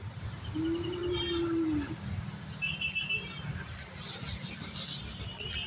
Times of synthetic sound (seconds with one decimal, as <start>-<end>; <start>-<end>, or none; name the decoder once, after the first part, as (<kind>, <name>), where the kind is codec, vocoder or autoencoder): 1.0-1.9 (vocoder, BigVGAN v2)